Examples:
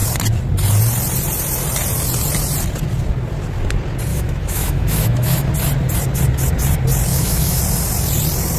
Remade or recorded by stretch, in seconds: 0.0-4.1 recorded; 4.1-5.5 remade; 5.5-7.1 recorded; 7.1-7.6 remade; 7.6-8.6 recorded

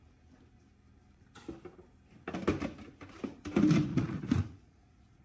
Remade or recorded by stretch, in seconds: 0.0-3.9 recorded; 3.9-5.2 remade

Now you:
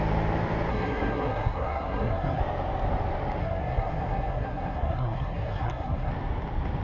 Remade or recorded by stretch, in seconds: 0.0-0.7 recorded; 0.7-2.4 remade; 2.4-3.4 recorded; 3.4-6.1 remade; 6.1-6.8 recorded

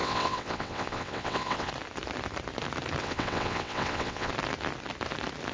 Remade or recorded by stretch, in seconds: 0.0-1.7 remade; 1.7-3.0 recorded; 3.0-4.3 remade; 4.3-5.5 recorded

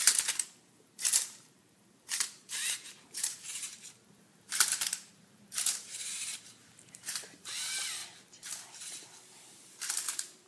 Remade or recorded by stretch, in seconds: 0.0-8.0 remade; 8.0-9.9 recorded; 9.9-10.5 remade

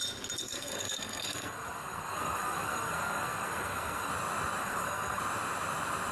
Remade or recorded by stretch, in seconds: 0.0-0.4 recorded; 0.4-4.1 remade; 4.1-4.6 recorded; 4.6-5.2 remade; 5.2-6.1 recorded

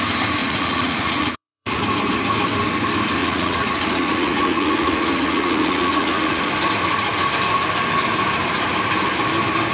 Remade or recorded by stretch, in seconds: 0.0-0.4 recorded; 0.4-1.8 remade; 1.8-3.2 recorded; 3.2-6.5 remade; 6.5-9.7 recorded

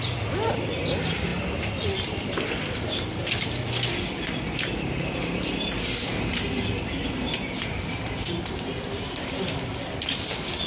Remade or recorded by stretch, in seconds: 0.0-1.3 recorded; 1.3-3.4 remade; 3.4-10.7 recorded